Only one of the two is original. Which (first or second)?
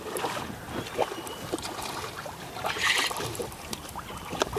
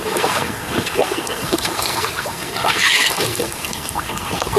first